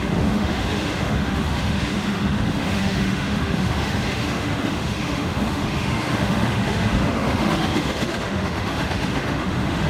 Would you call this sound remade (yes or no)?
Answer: yes